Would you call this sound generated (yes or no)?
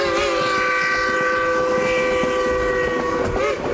no